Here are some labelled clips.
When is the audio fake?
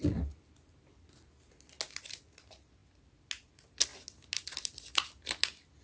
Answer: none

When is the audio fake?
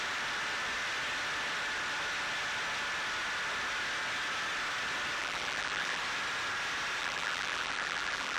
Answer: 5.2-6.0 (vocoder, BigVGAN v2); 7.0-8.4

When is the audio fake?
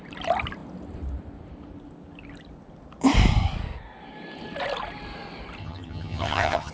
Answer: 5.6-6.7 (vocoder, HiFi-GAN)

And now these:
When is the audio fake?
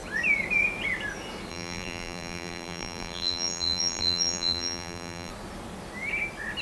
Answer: 1.5-5.3 (vocoder, BigVGAN v2)